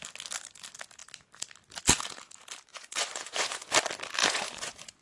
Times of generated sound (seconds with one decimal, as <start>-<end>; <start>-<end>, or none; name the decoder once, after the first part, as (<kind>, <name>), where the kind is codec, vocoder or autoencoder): 2.7-3.7 (vocoder, Vocos); 4.2-5.0